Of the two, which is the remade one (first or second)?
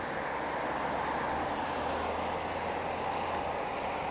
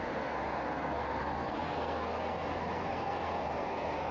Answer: second